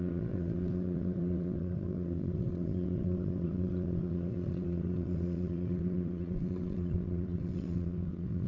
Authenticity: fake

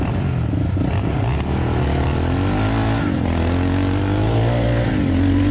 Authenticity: real